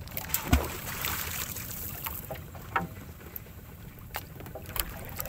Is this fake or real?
fake